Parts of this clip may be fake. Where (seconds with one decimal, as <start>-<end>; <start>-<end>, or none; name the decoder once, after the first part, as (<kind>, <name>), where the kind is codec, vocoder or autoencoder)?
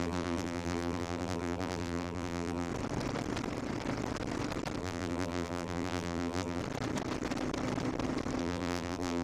0.0-2.7 (vocoder, BigVGAN v2); 4.8-6.6; 8.4-9.2